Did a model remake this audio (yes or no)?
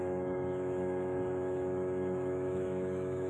yes